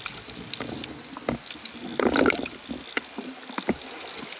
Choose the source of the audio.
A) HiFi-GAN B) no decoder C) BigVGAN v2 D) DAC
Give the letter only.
B